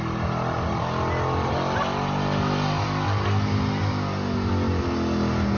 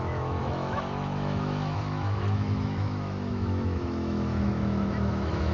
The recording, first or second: first